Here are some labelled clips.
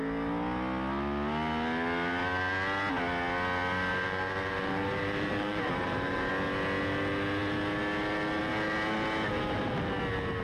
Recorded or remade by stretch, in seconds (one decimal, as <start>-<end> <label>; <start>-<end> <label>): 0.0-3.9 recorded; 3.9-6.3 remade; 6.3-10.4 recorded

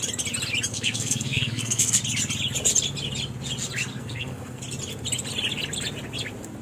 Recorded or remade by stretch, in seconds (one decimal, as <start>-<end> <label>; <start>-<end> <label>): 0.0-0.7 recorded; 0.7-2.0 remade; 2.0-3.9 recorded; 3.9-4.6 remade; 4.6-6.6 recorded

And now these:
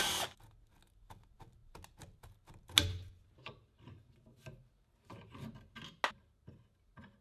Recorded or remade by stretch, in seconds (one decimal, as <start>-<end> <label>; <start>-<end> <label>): 0.0-7.2 recorded

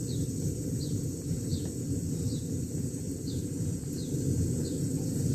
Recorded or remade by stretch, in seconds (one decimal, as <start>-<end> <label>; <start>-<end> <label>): 0.0-5.3 recorded

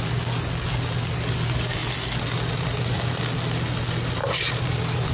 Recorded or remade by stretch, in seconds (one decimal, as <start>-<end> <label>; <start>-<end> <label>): 0.0-4.2 recorded; 4.2-5.1 remade